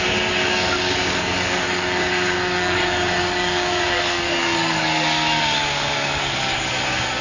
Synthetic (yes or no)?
yes